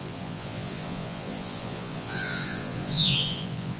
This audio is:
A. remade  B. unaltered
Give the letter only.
A